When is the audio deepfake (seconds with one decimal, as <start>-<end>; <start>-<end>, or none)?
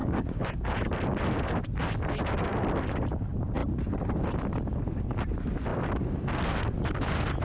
0.0-0.7